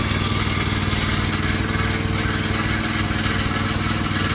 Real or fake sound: real